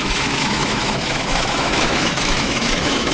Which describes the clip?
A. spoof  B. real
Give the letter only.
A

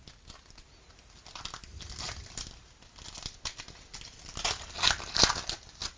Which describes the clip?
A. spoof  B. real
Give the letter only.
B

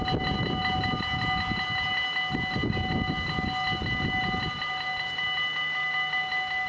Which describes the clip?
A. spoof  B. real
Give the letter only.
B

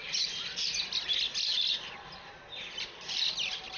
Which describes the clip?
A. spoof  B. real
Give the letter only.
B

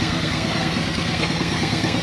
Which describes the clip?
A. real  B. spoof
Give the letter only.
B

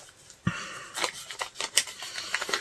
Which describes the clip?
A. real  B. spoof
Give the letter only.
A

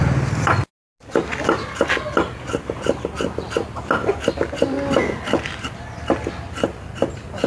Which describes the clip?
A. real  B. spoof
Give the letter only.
A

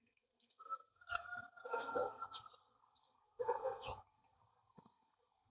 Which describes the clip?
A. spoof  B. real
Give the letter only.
A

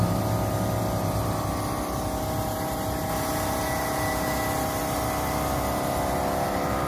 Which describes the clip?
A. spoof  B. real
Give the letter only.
B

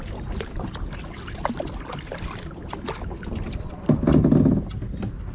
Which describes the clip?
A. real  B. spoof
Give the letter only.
A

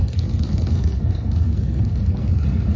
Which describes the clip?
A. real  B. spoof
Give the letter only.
B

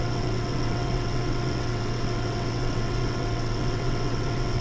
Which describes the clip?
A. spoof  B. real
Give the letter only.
A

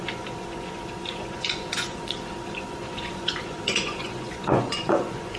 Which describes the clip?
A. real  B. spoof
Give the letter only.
B